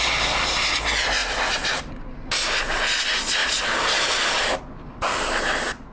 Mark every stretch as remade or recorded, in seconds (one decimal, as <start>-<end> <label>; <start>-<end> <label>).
0.0-5.9 recorded